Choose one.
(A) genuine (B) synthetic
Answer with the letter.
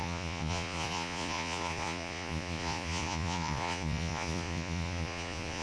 B